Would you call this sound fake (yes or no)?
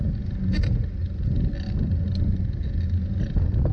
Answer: no